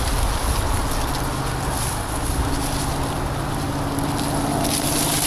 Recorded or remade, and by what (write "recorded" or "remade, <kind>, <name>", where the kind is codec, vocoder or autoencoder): recorded